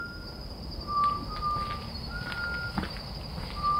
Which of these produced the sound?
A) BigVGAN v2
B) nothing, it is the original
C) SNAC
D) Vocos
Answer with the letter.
B